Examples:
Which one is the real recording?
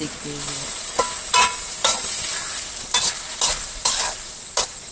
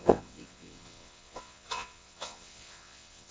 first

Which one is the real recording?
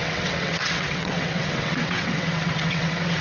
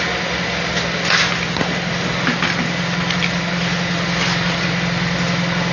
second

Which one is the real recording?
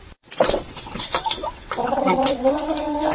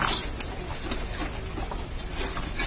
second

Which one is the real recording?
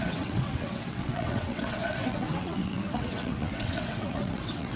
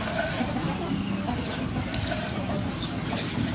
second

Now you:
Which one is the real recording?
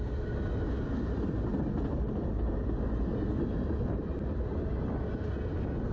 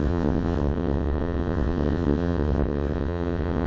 first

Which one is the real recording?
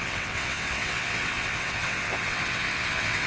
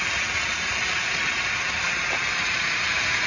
second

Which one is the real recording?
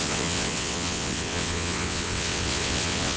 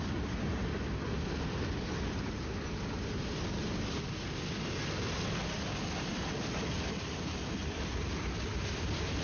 second